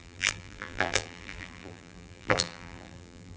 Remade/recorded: remade